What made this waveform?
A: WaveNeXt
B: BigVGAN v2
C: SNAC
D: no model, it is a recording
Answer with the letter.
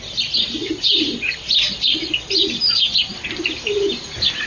D